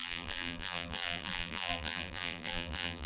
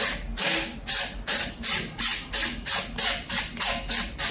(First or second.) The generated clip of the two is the first